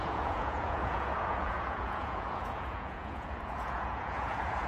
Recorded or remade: remade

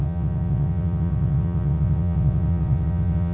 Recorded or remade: remade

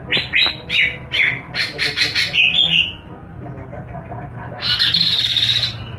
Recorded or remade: recorded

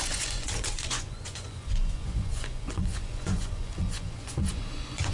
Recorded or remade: remade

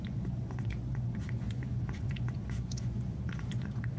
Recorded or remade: remade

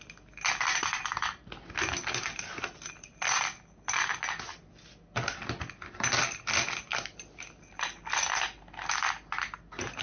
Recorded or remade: recorded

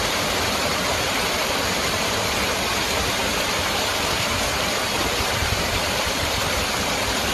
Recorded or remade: remade